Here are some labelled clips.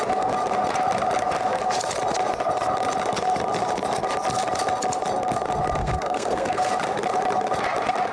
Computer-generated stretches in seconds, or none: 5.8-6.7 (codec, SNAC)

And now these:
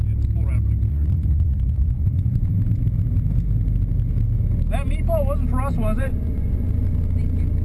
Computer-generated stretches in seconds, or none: 0.9-2.5 (vocoder, Vocos); 6.0-6.9

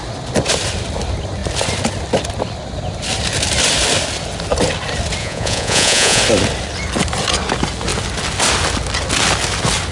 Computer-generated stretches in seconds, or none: 5.2-6.2 (vocoder, Vocos)

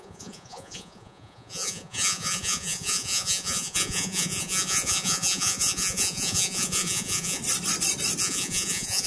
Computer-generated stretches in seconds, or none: 0.0-7.4 (vocoder, Vocos); 8.2-9.1

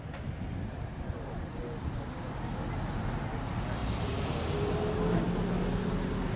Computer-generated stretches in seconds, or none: none

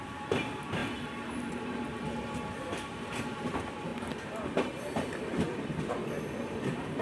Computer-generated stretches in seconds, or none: 0.0-0.8 (vocoder, BigVGAN v2); 2.6-7.0

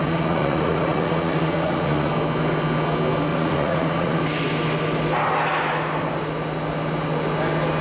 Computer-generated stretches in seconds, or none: 0.0-2.1 (vocoder, Vocos); 3.3-4.2

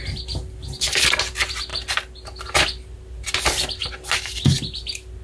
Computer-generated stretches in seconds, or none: none